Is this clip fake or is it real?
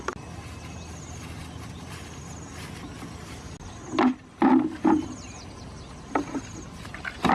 real